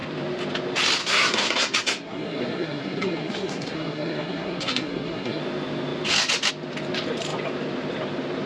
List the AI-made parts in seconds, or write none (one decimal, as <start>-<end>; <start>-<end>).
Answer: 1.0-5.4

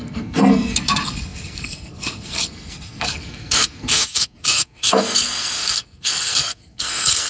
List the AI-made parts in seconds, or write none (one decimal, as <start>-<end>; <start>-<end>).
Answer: 0.0-7.3

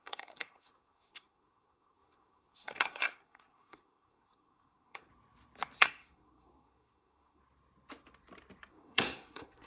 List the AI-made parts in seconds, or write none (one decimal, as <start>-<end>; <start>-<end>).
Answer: 0.0-5.1; 5.8-7.4; 8.7-9.7